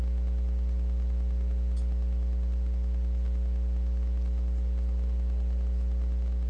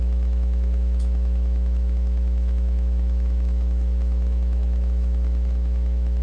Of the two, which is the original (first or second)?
first